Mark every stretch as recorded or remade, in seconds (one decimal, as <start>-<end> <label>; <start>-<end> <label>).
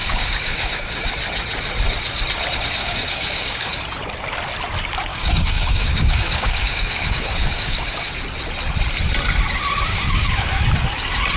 0.0-1.1 remade; 1.1-2.8 recorded; 2.8-3.7 remade; 3.7-5.1 recorded; 5.1-8.1 remade; 8.1-9.9 recorded; 9.9-10.6 remade; 10.6-11.4 recorded